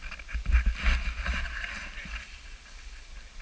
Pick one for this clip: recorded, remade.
recorded